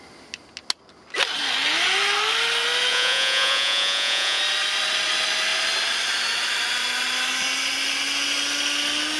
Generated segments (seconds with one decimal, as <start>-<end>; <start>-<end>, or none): 2.9-4.4